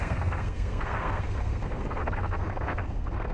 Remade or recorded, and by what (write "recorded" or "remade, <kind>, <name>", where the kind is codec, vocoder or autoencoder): remade, codec, SNAC